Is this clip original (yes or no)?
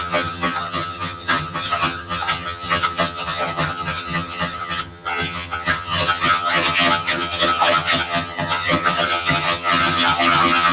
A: no